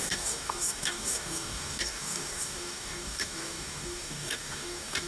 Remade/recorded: remade